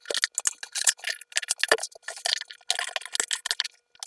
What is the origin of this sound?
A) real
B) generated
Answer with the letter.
A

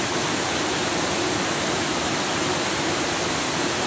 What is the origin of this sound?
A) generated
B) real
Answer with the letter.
B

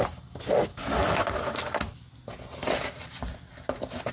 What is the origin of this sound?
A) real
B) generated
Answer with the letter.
A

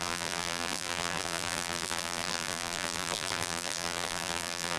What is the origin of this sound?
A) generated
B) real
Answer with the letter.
A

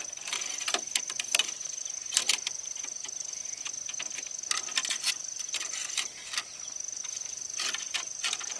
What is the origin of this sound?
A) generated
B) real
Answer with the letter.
B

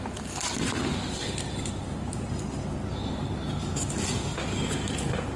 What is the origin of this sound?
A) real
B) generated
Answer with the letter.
A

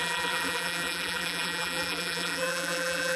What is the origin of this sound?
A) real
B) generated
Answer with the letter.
B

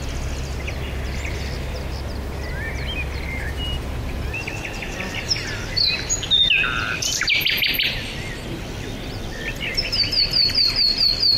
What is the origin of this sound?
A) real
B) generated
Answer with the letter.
A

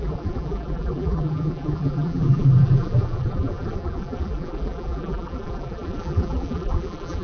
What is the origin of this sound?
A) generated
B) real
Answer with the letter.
A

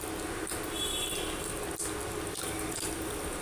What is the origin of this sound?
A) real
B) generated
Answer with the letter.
A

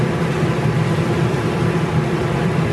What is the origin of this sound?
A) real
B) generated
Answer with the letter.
B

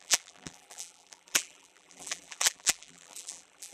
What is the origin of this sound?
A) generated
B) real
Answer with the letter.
A